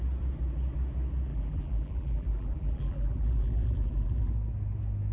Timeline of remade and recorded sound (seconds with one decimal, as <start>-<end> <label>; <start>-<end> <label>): 0.0-1.3 recorded; 1.3-4.3 remade; 4.3-5.1 recorded